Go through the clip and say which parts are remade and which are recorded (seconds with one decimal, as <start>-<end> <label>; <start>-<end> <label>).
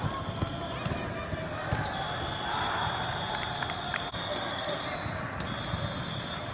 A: 0.0-4.2 recorded; 4.2-4.8 remade; 4.8-6.5 recorded